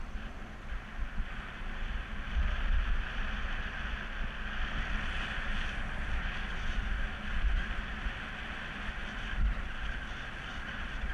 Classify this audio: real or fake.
real